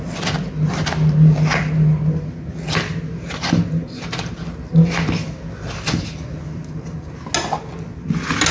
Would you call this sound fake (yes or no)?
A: no